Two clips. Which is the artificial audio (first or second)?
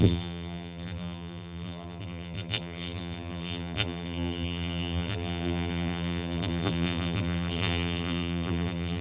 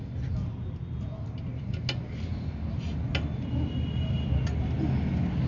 first